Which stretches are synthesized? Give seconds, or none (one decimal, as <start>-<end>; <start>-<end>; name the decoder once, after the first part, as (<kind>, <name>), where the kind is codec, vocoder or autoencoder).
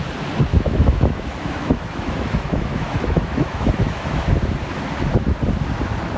0.5-4.2 (autoencoder, DAC-VAE)